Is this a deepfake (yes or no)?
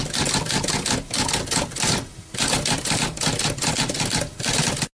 no